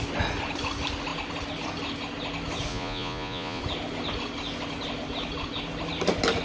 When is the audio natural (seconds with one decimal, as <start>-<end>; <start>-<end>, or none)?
0.0-2.7; 3.6-6.4